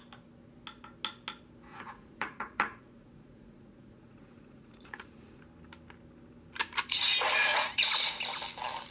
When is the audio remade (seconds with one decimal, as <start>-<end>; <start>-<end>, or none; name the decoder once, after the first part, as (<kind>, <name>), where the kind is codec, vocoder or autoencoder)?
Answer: 1.7-5.4 (vocoder, Vocos); 7.5-8.2